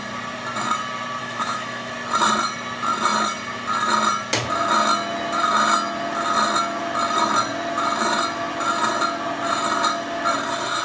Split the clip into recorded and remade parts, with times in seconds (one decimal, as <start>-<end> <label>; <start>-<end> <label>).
0.0-1.2 recorded; 1.2-1.9 remade; 1.9-10.8 recorded

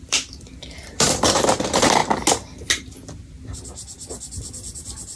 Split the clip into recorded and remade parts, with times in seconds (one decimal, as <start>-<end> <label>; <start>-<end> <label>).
0.0-2.0 remade; 2.0-5.2 recorded

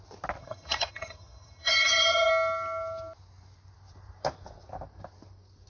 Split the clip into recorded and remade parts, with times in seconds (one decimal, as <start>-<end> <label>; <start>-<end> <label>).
0.0-0.4 recorded; 0.4-2.3 remade; 2.3-5.7 recorded